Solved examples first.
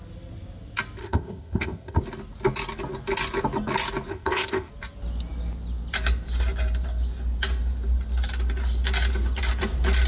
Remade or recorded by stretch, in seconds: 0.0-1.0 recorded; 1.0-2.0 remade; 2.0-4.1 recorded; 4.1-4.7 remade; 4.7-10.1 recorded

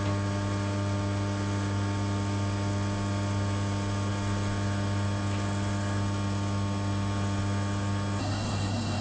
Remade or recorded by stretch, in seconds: 0.0-8.2 recorded; 8.2-9.0 remade

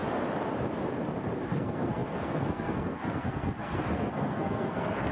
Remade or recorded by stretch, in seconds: 0.0-1.5 recorded; 1.5-5.1 remade

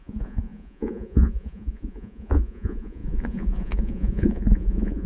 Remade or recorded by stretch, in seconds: 0.0-5.1 remade